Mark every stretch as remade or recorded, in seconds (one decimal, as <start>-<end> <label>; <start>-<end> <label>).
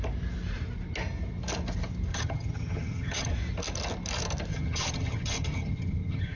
0.0-2.1 recorded; 2.1-3.3 remade; 3.3-4.5 recorded; 4.5-6.4 remade